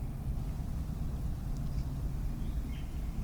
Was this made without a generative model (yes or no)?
yes